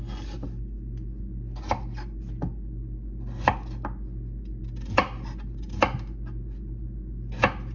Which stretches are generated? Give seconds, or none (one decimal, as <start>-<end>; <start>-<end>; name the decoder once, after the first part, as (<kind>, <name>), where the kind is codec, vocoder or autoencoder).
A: none